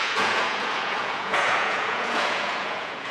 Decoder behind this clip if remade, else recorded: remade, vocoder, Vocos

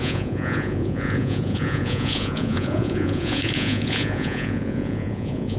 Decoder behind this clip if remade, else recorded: remade, vocoder, Vocos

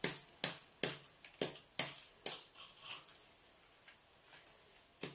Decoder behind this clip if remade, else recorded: recorded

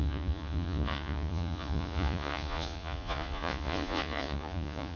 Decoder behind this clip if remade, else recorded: remade, vocoder, Vocos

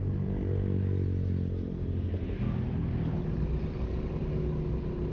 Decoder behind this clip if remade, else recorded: recorded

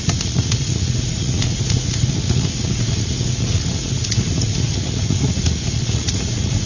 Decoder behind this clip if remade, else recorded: remade, vocoder, Vocos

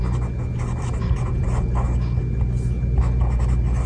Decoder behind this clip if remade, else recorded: recorded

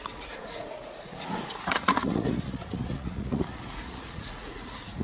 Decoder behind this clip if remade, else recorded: remade, vocoder, Vocos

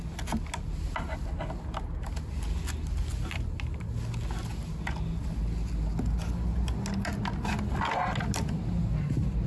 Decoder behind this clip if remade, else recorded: recorded